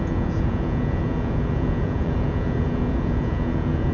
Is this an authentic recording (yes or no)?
no